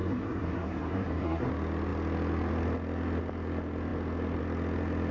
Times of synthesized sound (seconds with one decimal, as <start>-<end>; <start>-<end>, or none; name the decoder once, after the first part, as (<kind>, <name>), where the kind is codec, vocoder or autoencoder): 0.0-1.5 (codec, SNAC)